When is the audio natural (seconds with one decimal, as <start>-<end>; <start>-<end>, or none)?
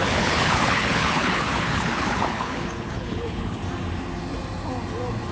3.6-5.3